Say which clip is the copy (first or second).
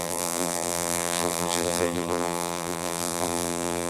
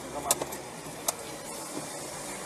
first